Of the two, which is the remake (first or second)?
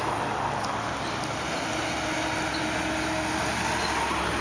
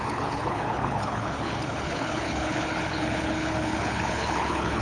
second